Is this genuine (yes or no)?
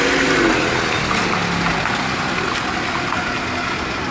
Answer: yes